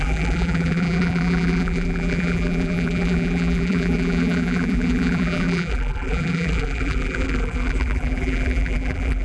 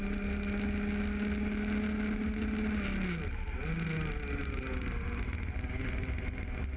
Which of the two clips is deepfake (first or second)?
first